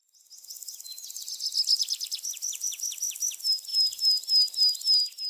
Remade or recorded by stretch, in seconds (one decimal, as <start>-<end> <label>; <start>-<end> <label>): 0.0-5.3 recorded